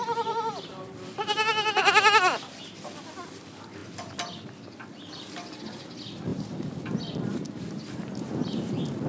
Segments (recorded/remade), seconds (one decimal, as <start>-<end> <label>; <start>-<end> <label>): 0.0-0.7 recorded; 0.7-1.2 remade; 1.2-9.1 recorded